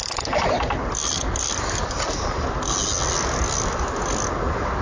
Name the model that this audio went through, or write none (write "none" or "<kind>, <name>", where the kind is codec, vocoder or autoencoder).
none